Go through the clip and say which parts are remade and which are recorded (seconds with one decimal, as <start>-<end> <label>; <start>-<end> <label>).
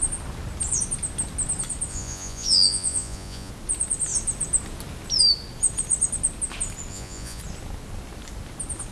0.0-1.9 recorded; 1.9-3.5 remade; 3.5-6.9 recorded; 6.9-7.4 remade; 7.4-8.9 recorded